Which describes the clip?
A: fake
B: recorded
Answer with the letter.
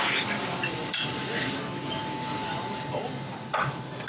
B